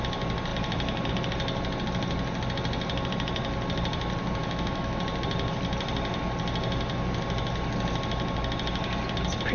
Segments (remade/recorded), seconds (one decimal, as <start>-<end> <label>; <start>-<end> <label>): 0.0-4.4 recorded; 4.4-5.0 remade; 5.0-9.5 recorded

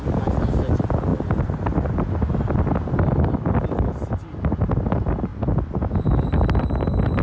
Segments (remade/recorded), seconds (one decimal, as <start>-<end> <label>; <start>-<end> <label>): 0.0-7.2 recorded